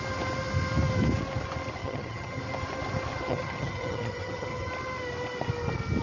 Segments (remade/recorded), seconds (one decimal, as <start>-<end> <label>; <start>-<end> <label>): 0.0-1.8 recorded; 1.8-2.4 remade; 2.4-3.3 recorded; 3.3-4.7 remade; 4.7-6.0 recorded